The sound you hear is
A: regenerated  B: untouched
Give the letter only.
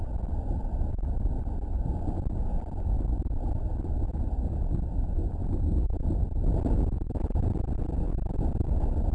B